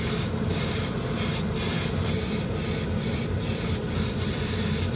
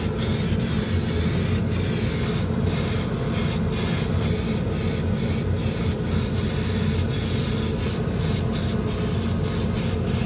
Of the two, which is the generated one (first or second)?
first